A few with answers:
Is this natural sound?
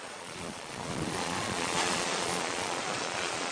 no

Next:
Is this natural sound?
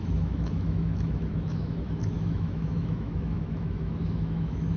no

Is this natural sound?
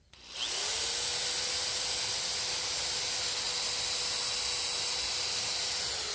yes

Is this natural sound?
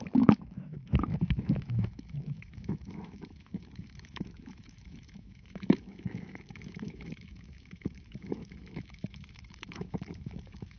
no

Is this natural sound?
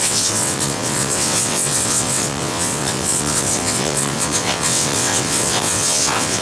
no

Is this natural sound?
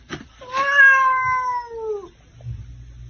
yes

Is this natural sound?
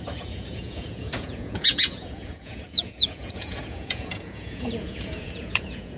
no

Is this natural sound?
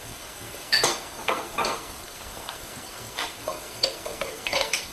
no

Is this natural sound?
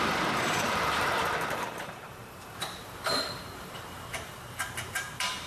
no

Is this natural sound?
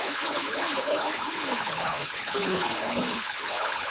no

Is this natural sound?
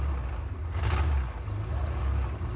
yes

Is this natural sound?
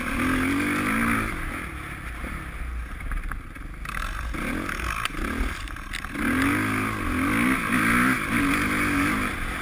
yes